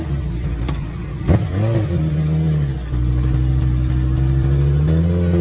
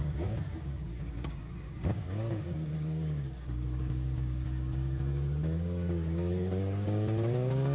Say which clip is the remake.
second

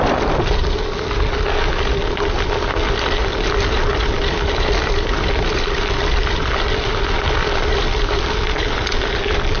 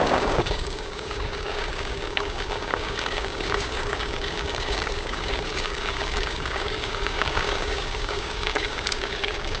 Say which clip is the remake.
second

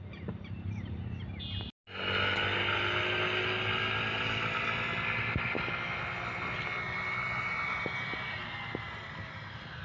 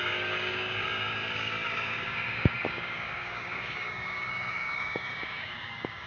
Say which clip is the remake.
second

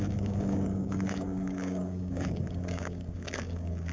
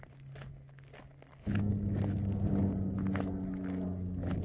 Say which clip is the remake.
first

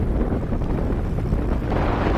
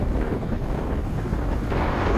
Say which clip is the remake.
second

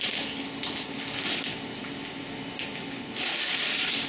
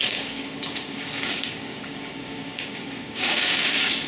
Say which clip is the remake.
second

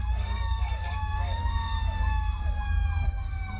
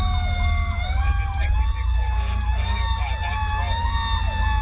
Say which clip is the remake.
first